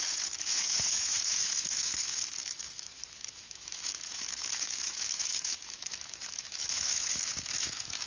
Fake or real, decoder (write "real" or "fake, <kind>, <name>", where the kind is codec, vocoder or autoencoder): fake, autoencoder, DAC-VAE